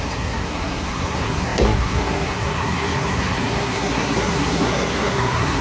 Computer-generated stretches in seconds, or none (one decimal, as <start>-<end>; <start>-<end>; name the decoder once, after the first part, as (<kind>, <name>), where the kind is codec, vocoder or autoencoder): 0.0-5.6 (codec, SNAC)